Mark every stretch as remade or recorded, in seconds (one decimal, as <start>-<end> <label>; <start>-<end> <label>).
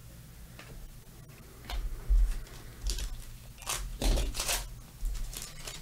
0.0-3.9 recorded; 3.9-4.5 remade; 4.5-5.8 recorded